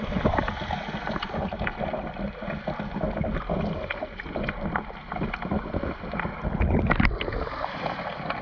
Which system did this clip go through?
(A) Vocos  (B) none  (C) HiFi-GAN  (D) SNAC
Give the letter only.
B